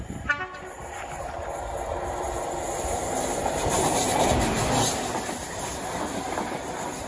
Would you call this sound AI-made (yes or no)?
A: no